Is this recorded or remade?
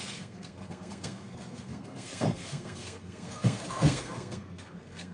remade